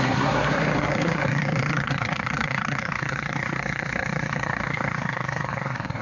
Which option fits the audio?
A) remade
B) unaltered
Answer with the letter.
A